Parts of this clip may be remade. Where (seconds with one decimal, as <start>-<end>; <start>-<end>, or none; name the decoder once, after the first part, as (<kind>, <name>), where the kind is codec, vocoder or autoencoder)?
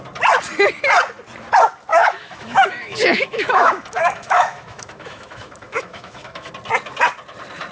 1.9-6.5 (autoencoder, DAC-VAE)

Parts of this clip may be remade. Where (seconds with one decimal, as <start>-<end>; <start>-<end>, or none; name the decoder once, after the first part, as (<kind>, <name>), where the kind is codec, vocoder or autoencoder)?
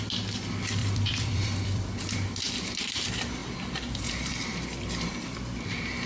0.8-2.8 (vocoder, BigVGAN v2); 3.4-4.9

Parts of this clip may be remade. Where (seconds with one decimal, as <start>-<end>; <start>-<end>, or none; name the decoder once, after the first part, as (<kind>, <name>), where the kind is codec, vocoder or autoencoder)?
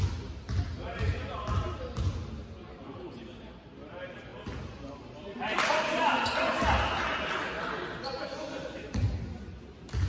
none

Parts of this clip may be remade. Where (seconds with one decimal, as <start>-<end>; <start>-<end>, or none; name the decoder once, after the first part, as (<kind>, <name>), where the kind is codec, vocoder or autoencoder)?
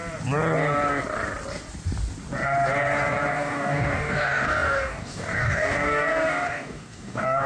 3.3-7.5 (codec, DAC)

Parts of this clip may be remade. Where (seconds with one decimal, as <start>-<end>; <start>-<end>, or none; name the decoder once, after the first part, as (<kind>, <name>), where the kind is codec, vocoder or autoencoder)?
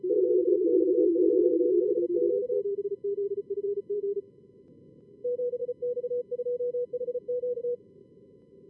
0.0-1.5 (vocoder, Vocos); 2.3-5.6; 6.9-8.7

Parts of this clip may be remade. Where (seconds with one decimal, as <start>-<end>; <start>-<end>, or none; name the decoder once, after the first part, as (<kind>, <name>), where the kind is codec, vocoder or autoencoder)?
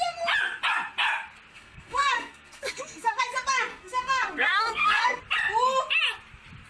1.5-3.2 (codec, SNAC); 3.7-5.2